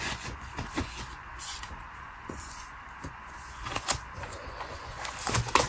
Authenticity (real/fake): fake